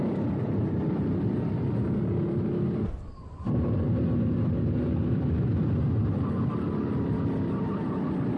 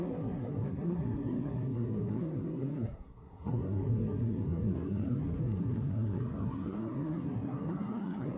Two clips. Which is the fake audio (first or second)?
second